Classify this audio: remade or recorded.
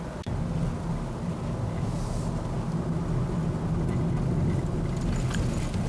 recorded